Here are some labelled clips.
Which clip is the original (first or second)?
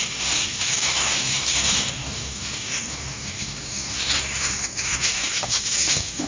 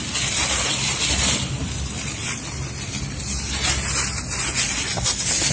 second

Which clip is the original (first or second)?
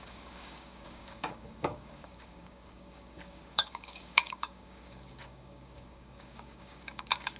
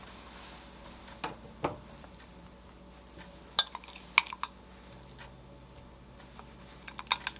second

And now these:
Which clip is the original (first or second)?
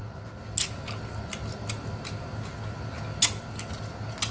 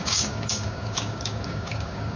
first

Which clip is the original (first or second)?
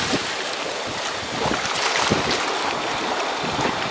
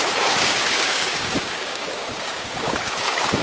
first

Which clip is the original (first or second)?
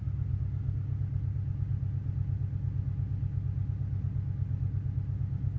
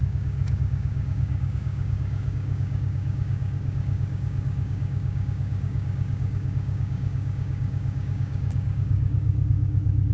first